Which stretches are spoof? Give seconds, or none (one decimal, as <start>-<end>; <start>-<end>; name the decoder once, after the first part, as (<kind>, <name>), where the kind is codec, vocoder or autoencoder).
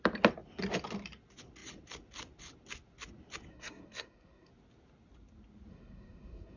3.5-4.5 (codec, SNAC); 5.7-6.6